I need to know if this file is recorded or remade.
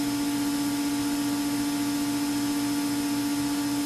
recorded